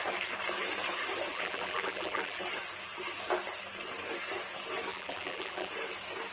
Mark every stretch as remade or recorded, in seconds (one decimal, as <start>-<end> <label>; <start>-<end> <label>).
0.0-1.3 recorded; 1.3-2.4 remade; 2.4-4.9 recorded; 4.9-5.7 remade; 5.7-6.3 recorded